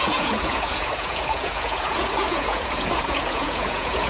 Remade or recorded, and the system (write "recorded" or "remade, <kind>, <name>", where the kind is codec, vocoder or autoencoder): remade, vocoder, Vocos